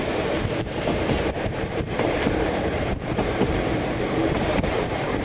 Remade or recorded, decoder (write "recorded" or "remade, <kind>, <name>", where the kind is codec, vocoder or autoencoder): remade, vocoder, BigVGAN v2